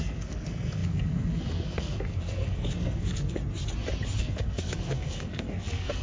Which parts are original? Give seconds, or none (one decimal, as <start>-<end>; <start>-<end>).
3.4-4.2